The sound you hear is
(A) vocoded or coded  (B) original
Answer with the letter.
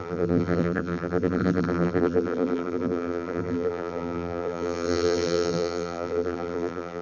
A